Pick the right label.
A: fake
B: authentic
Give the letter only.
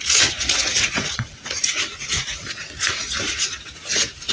A